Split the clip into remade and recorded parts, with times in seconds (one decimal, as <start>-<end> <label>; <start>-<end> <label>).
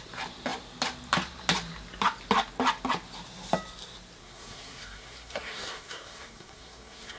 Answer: 0.0-4.2 recorded; 4.2-7.2 remade